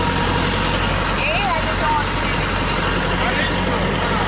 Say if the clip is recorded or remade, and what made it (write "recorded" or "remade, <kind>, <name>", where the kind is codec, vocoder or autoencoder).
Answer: recorded